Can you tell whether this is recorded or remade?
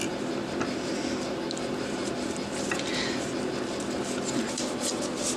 recorded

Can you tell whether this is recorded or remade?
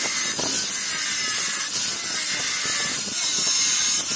recorded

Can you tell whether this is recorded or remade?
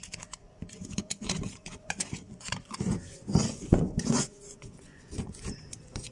remade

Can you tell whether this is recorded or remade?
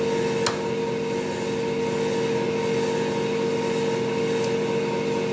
recorded